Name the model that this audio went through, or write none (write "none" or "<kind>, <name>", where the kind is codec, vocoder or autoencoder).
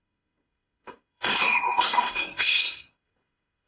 codec, SNAC